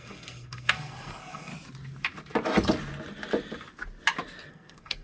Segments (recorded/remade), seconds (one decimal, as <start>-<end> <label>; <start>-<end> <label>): 0.0-1.5 remade; 1.5-4.5 recorded; 4.5-5.0 remade